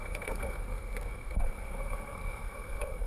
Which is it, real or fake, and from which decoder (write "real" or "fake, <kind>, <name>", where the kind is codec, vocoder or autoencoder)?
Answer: fake, codec, SNAC